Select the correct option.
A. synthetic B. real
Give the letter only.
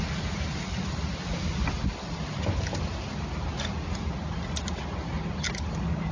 B